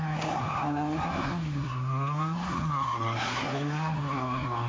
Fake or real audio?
fake